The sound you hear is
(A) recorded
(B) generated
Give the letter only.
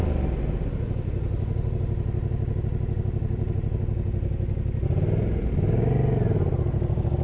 A